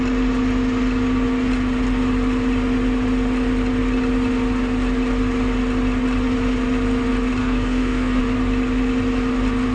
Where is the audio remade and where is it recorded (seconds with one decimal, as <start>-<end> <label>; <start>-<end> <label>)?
0.0-7.4 recorded; 7.4-8.2 remade; 8.2-9.7 recorded